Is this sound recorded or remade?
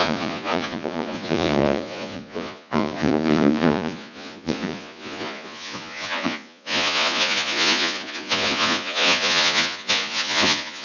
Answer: remade